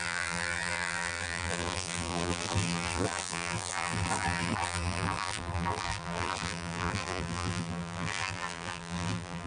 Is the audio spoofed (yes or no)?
yes